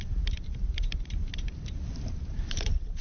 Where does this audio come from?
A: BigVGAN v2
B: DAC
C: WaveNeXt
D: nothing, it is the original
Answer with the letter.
A